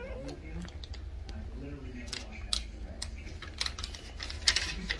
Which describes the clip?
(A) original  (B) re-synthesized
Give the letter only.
A